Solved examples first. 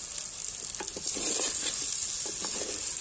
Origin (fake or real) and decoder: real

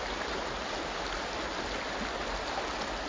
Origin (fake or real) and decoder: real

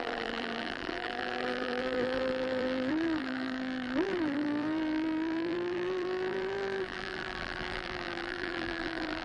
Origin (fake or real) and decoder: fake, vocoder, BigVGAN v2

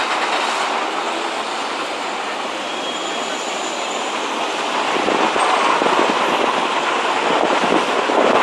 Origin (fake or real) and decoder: fake, vocoder, BigVGAN v2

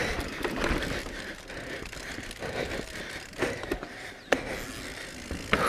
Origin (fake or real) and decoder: real